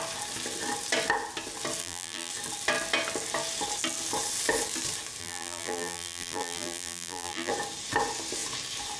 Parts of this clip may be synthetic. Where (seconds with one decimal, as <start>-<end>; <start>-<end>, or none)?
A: 1.8-2.3; 5.2-7.5